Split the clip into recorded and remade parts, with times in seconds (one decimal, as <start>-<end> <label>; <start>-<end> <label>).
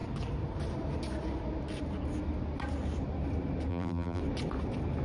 0.0-3.7 recorded; 3.7-4.2 remade; 4.2-5.0 recorded